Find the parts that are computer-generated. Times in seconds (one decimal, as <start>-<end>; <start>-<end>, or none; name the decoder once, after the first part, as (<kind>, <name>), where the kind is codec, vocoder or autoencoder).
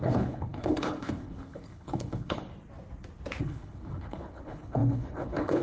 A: 0.0-2.5 (codec, HILCodec); 3.4-5.6